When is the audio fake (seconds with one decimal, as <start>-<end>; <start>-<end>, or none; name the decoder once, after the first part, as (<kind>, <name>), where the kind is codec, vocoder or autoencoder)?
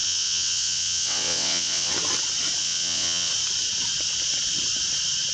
0.0-1.9 (vocoder, WaveNeXt); 2.6-3.3